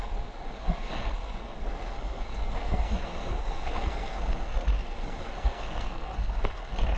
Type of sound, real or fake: fake